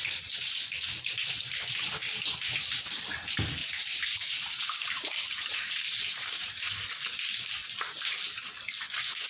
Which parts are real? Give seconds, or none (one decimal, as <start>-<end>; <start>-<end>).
0.0-3.6; 6.7-9.3